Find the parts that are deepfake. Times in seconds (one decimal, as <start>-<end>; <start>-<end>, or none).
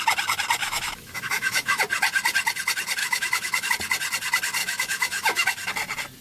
0.6-1.8; 3.0-3.7; 4.6-5.7